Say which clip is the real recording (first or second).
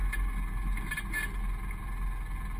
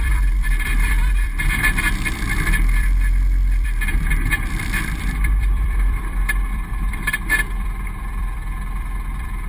first